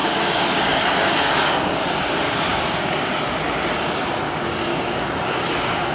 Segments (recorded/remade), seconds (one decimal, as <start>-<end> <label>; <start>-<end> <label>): 0.0-1.7 remade; 1.7-2.5 recorded; 2.5-3.1 remade; 3.1-4.7 recorded; 4.7-5.9 remade